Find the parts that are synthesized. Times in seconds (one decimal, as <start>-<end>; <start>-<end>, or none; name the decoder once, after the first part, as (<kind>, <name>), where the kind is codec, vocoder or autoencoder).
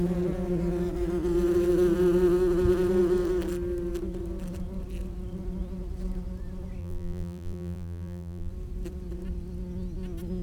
6.8-8.5 (vocoder, BigVGAN v2)